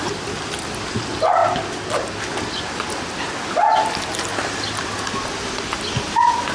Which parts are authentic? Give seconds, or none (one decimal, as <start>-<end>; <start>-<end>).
0.0-6.5